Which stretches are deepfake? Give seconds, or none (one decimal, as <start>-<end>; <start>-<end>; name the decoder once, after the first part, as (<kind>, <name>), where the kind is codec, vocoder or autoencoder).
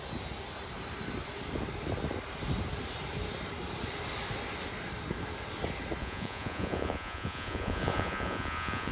6.0-8.9 (vocoder, Vocos)